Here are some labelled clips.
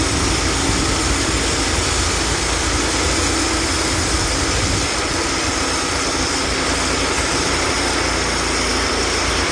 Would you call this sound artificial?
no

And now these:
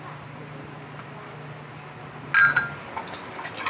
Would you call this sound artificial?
no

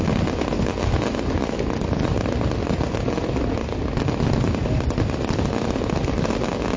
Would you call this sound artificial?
no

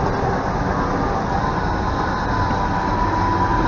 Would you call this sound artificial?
no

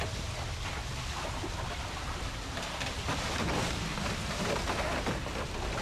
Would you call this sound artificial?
no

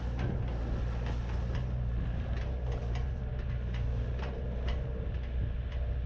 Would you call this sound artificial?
no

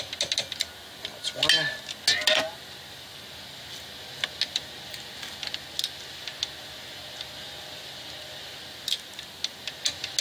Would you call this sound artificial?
no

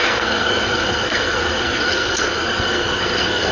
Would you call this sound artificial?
yes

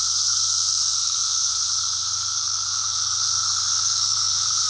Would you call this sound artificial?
yes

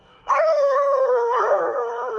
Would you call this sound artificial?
yes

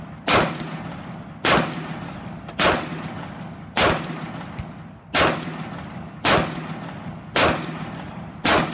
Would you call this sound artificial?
no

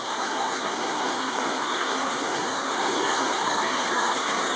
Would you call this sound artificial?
yes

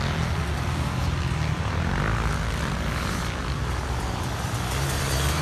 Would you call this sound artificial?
no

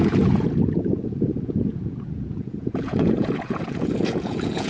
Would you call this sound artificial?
yes